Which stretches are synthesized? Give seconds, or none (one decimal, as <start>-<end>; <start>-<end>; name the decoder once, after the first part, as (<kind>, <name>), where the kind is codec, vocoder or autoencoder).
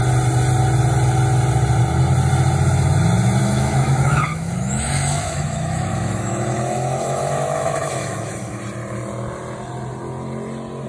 3.4-8.6 (autoencoder, DAC-VAE)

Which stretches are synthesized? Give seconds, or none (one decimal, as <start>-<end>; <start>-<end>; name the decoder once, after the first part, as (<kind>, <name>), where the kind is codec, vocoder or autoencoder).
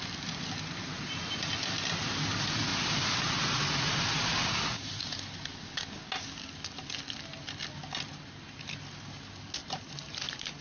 2.7-5.2 (vocoder, BigVGAN v2); 9.6-10.6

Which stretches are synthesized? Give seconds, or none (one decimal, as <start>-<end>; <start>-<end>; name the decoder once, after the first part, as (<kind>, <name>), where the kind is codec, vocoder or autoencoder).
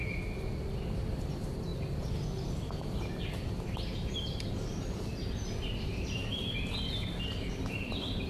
1.1-8.3 (vocoder, BigVGAN v2)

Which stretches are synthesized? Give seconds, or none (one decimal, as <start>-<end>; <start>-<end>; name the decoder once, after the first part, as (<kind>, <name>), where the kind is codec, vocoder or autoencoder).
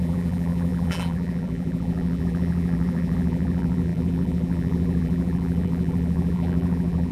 0.0-7.1 (vocoder, BigVGAN v2)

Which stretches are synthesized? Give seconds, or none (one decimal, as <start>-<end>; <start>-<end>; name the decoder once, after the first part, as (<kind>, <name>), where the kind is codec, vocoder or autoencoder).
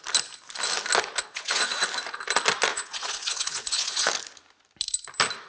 1.2-1.8 (vocoder, Vocos); 2.7-4.1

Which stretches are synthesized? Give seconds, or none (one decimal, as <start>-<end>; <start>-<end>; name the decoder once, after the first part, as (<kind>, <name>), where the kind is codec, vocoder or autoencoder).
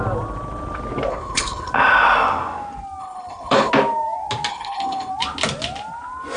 1.1-1.7 (codec, HILCodec); 3.0-3.7; 4.5-5.1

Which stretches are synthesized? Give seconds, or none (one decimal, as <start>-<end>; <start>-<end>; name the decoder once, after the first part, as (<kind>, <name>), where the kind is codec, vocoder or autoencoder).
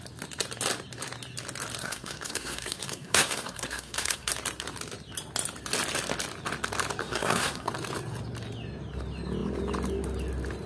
1.8-4.3 (codec, SNAC); 7.0-7.7